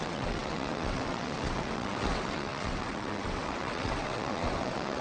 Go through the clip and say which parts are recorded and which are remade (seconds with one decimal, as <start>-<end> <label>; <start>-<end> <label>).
0.0-5.0 remade